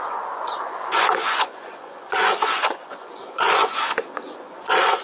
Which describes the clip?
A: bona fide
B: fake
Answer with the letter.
B